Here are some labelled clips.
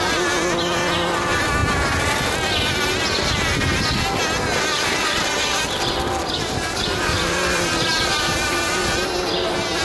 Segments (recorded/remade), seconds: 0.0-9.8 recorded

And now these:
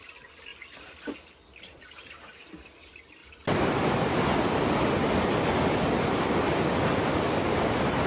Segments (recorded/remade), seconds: 0.0-3.2 recorded; 3.2-7.4 remade; 7.4-8.1 recorded

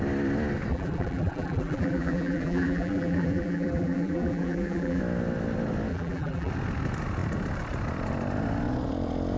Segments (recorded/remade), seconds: 0.0-0.7 recorded; 0.7-5.0 remade; 5.0-5.9 recorded; 5.9-6.5 remade; 6.5-9.4 recorded

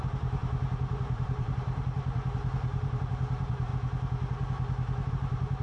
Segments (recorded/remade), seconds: 0.0-3.7 remade; 3.7-5.1 recorded; 5.1-5.6 remade

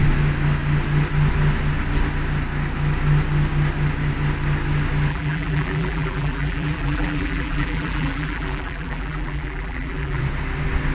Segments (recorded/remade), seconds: 0.0-5.1 recorded; 5.1-10.2 remade; 10.2-10.9 recorded